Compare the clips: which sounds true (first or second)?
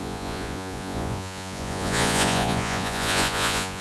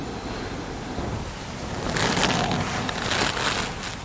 second